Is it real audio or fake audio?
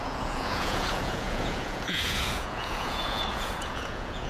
fake